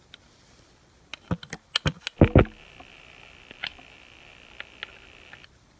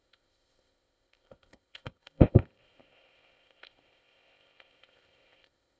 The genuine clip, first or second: first